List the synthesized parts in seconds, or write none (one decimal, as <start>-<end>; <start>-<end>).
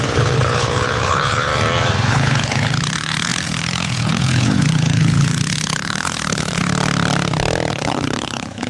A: 0.0-1.5; 2.1-6.6; 7.7-8.7